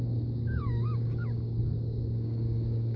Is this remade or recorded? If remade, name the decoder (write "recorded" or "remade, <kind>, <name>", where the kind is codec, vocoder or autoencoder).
remade, codec, DAC